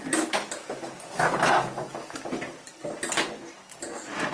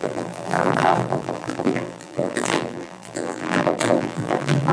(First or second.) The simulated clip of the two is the second